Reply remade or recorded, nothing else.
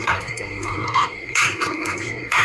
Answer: remade